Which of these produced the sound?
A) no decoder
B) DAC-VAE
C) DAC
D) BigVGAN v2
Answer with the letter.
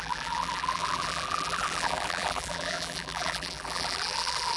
D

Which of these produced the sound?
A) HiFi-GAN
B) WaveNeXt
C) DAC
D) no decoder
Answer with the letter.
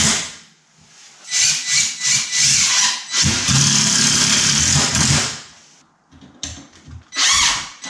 D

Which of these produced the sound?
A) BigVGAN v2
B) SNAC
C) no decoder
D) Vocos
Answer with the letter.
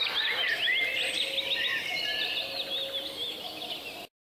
C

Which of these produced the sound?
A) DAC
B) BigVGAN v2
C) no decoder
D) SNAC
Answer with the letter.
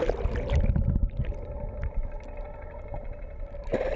C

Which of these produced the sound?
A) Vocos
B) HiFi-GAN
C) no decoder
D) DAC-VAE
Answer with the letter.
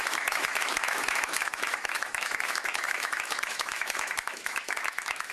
D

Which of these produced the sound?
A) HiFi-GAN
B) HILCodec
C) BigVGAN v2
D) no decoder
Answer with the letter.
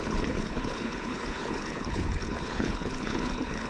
B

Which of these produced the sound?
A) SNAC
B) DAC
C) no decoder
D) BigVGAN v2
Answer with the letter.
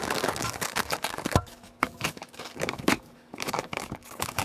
B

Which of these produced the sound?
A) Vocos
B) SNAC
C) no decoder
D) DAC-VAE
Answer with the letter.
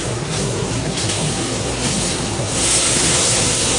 B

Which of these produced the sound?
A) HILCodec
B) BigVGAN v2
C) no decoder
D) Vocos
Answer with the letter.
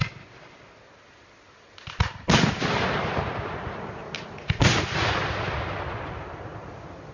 C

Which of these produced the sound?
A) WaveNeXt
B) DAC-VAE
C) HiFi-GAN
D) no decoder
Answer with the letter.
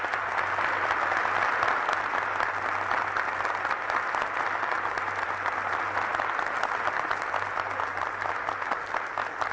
D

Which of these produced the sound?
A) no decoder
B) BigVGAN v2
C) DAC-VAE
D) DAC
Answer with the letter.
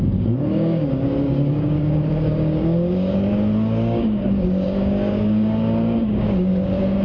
D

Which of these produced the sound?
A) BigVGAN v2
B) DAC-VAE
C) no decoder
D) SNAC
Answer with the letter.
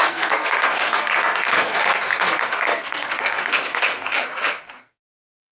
D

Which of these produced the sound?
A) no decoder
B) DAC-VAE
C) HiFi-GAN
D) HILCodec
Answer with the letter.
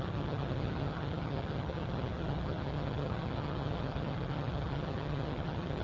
C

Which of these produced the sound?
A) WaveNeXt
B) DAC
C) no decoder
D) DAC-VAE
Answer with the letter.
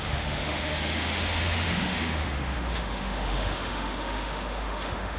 D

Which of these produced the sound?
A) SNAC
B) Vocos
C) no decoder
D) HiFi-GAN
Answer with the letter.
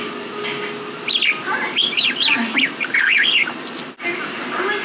C